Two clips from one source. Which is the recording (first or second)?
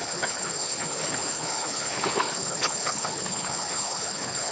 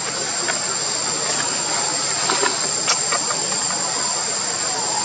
second